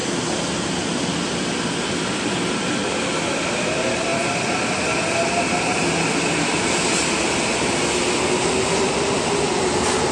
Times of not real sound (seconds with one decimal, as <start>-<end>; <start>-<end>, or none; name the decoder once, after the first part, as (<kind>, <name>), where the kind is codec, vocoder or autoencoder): none